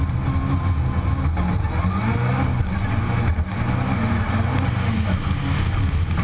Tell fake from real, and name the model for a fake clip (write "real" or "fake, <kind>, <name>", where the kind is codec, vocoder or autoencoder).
real